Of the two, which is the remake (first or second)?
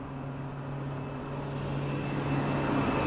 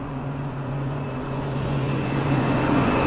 second